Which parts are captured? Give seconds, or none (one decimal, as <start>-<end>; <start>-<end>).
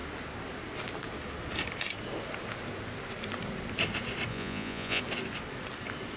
0.0-4.3; 5.0-6.2